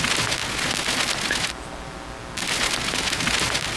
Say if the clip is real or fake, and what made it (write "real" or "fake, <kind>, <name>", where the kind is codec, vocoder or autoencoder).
real